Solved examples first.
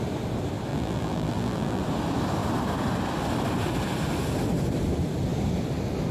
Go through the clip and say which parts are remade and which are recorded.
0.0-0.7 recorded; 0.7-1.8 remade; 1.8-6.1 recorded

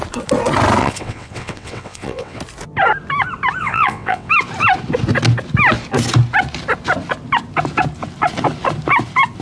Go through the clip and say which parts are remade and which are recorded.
0.0-0.8 recorded; 0.8-2.4 remade; 2.4-3.6 recorded; 3.6-4.3 remade; 4.3-9.4 recorded

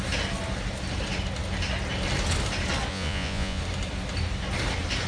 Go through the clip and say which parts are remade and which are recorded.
0.0-2.9 recorded; 2.9-3.6 remade; 3.6-5.1 recorded